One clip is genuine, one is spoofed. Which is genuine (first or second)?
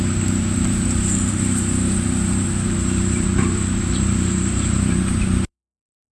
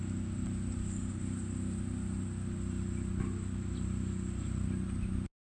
second